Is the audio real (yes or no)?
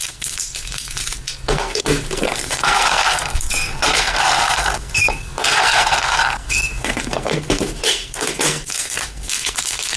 no